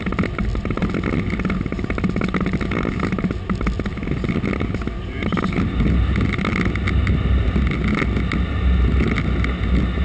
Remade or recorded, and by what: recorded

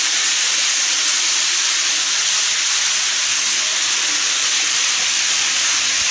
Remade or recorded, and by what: recorded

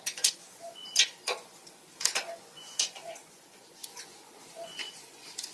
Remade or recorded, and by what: remade, vocoder, Vocos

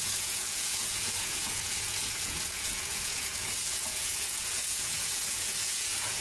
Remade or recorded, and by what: remade, vocoder, Vocos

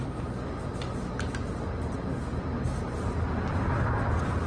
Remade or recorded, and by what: recorded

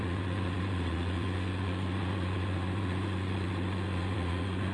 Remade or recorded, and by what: remade, vocoder, Vocos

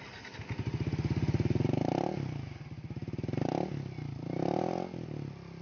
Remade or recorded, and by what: recorded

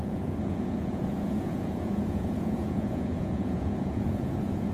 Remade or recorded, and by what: remade, vocoder, Vocos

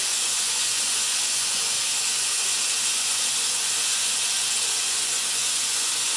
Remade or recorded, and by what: remade, vocoder, Vocos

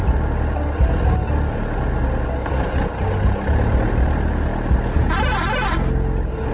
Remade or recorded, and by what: recorded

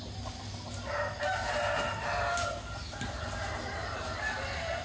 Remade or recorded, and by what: recorded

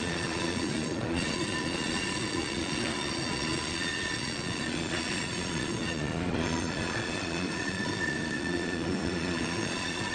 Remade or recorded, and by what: remade, vocoder, Vocos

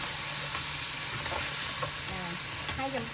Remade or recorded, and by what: recorded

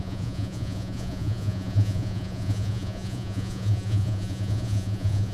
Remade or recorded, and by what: remade, vocoder, Vocos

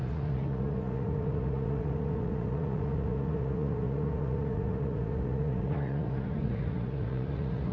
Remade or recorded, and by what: remade, vocoder, Vocos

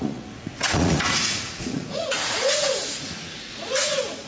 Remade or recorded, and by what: remade, vocoder, Vocos